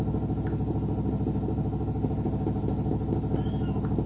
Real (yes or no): yes